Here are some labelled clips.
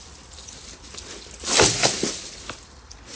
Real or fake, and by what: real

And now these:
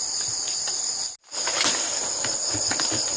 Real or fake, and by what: real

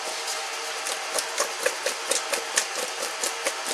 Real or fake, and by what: real